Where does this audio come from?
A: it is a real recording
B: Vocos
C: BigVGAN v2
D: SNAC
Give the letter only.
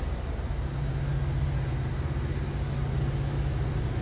A